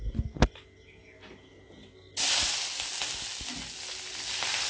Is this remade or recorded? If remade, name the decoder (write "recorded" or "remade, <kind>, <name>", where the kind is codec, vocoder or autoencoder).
recorded